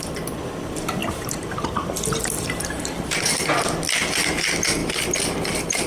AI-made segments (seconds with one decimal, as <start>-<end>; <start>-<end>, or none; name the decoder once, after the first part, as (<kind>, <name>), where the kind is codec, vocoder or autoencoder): 1.0-3.8 (vocoder, BigVGAN v2)